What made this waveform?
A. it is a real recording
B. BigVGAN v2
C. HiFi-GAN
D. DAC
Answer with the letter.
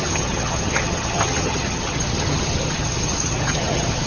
C